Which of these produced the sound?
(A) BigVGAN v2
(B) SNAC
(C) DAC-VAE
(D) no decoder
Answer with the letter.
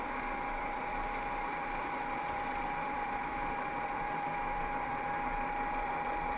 A